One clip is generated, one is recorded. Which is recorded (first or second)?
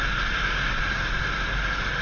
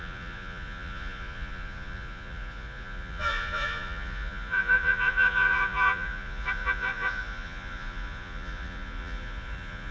first